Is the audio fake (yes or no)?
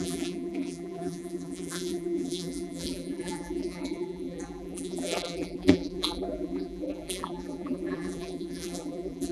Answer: yes